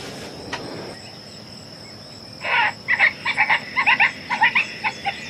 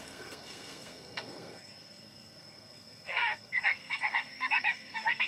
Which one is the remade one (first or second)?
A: second